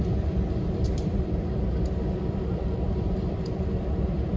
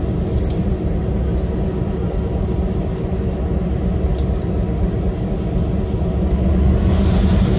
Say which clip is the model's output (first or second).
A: first